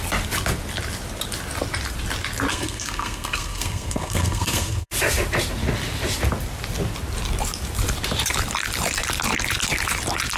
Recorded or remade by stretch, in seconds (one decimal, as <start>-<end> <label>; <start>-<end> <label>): 0.0-2.5 recorded; 2.5-4.9 remade; 4.9-10.4 recorded